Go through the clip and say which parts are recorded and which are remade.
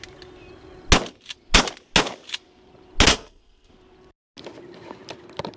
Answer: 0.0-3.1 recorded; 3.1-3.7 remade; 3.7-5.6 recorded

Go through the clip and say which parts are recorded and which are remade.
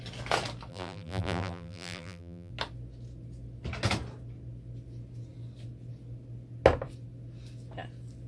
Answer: 0.0-0.7 recorded; 0.7-2.5 remade; 2.5-8.3 recorded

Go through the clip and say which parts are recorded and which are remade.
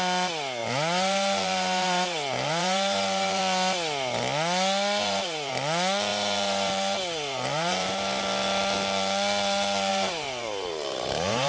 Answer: 0.0-0.6 recorded; 0.6-3.4 remade; 3.4-5.0 recorded; 5.0-5.5 remade; 5.5-6.1 recorded; 6.1-8.2 remade; 8.2-9.9 recorded; 9.9-11.5 remade